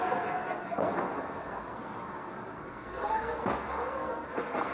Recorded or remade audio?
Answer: remade